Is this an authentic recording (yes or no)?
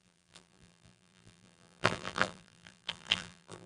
no